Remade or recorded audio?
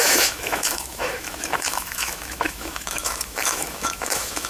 remade